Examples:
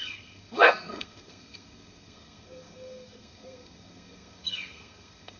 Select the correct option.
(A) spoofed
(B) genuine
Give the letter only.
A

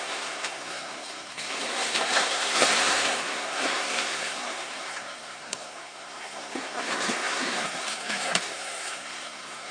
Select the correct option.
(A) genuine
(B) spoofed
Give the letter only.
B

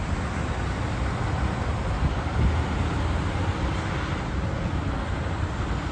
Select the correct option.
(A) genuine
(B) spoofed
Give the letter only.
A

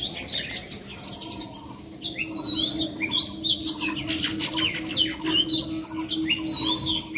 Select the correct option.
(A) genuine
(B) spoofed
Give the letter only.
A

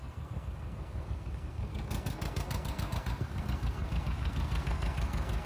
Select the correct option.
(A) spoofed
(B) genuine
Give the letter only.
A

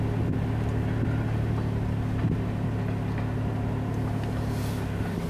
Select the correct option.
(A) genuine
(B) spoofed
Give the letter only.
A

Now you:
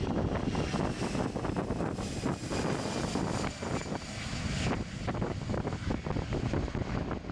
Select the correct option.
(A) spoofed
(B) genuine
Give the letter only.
B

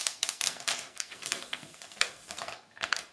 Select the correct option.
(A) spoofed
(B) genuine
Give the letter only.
A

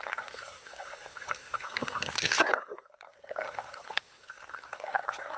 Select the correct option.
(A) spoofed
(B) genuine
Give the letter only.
A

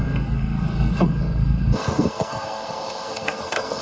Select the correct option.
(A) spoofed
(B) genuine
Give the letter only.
A